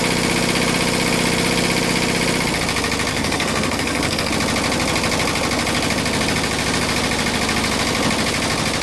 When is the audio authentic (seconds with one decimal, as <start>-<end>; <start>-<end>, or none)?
0.0-3.1; 4.3-8.8